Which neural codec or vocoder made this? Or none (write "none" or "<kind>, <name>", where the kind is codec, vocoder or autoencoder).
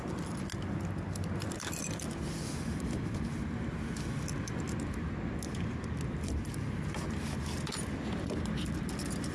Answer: none